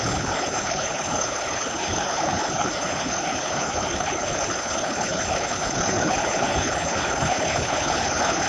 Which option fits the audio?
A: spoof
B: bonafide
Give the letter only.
A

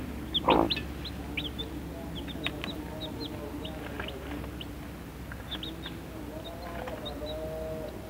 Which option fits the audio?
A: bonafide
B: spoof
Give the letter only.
A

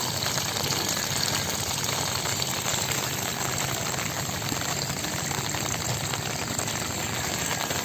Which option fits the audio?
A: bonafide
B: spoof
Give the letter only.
B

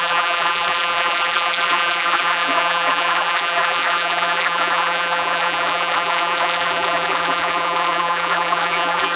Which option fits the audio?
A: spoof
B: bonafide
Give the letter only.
A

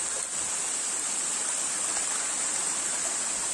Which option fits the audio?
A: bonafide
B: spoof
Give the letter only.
A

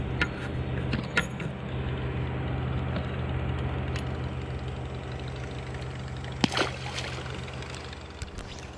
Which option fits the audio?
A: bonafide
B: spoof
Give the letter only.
A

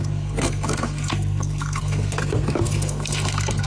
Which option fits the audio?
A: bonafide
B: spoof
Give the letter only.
B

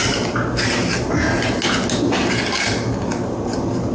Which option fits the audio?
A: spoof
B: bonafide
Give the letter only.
B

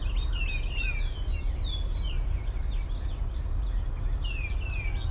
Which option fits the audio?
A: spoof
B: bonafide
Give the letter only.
B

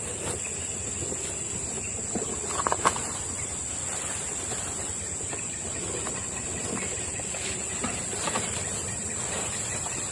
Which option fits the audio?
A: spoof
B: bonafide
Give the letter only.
B